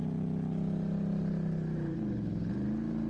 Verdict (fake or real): real